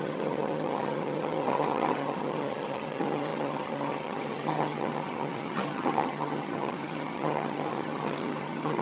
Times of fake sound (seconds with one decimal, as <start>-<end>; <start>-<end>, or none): 0.0-8.8